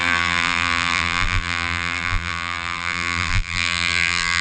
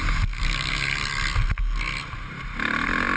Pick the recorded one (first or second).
second